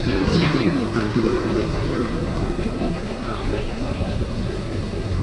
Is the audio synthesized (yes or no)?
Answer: yes